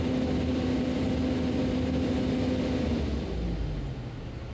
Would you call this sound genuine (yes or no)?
yes